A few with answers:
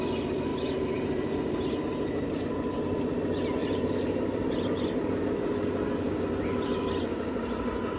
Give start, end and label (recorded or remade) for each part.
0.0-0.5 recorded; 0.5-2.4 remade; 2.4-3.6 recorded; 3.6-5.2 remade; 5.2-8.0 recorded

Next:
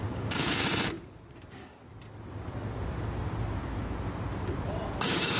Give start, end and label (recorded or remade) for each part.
0.0-0.6 remade; 0.6-1.3 recorded; 1.3-1.8 remade; 1.8-5.0 recorded; 5.0-5.4 remade